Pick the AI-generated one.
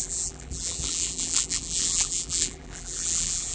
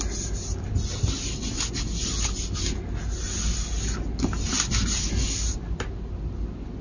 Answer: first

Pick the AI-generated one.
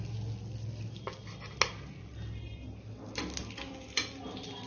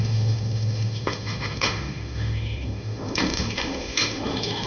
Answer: second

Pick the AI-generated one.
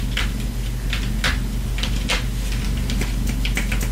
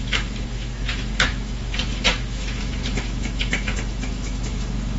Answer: second